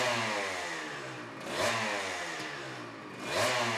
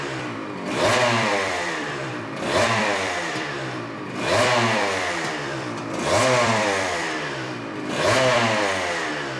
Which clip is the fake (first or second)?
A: second